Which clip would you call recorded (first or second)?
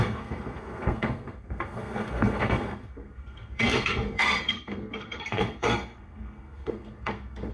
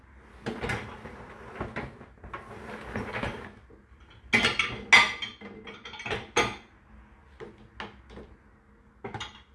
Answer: second